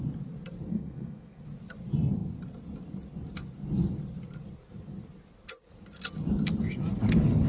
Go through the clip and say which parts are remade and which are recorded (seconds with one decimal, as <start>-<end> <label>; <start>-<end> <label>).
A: 0.0-0.7 recorded; 0.7-1.4 remade; 1.4-7.5 recorded